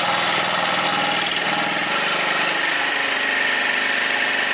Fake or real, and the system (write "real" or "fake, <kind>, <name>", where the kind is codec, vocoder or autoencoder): real